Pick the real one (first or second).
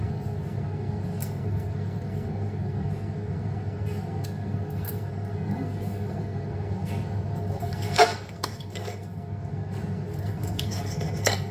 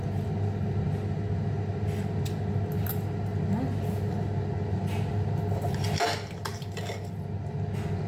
second